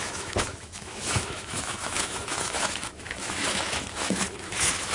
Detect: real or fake fake